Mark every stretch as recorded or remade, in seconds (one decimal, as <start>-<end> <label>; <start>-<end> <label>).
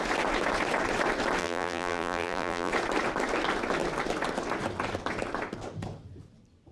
0.0-1.4 recorded; 1.4-2.7 remade; 2.7-6.7 recorded